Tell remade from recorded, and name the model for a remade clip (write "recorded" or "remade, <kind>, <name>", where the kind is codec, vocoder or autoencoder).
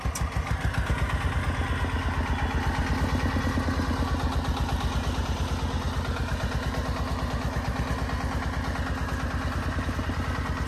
recorded